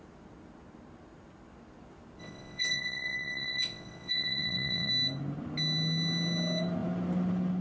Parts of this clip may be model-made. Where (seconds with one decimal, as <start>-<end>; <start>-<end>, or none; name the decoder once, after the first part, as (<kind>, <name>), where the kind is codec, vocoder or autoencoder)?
2.2-4.9 (vocoder, WaveNeXt)